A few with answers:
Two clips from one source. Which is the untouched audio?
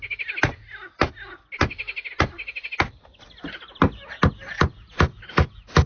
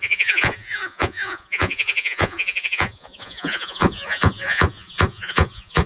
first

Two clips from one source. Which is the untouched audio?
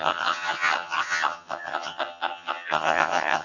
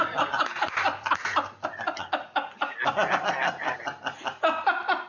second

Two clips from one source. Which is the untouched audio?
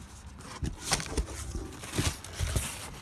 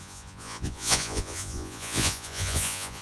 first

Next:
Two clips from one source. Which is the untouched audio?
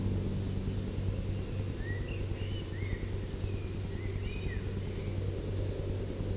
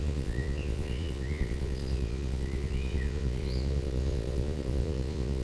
first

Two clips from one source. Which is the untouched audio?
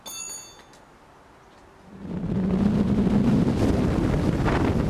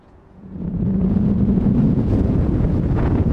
first